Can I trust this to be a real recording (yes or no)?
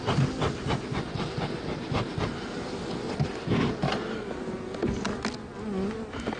yes